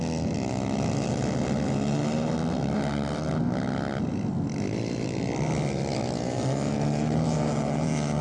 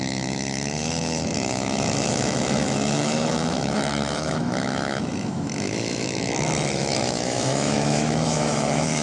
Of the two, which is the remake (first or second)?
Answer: second